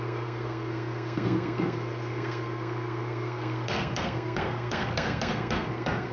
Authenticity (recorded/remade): remade